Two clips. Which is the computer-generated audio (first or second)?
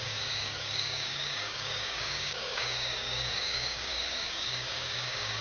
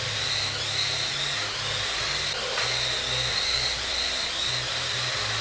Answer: first